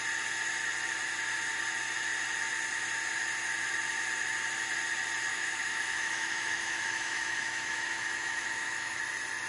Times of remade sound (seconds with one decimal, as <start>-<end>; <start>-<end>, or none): 5.3-9.0